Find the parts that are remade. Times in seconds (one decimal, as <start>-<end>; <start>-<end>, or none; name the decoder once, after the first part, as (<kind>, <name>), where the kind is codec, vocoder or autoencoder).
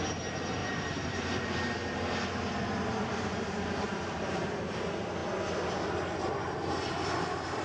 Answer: 0.6-1.5 (vocoder, BigVGAN v2); 3.3-4.5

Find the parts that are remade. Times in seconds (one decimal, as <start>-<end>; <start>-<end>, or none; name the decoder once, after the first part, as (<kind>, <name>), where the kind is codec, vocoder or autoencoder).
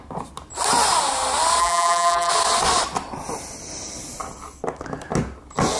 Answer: 1.6-2.3 (vocoder, BigVGAN v2)